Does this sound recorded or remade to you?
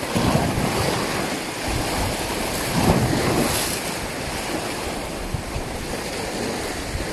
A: recorded